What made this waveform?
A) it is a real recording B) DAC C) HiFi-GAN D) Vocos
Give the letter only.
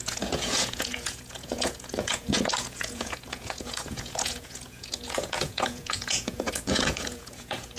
D